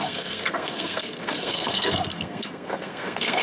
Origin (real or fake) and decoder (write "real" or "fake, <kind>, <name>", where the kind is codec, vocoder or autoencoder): fake, codec, SNAC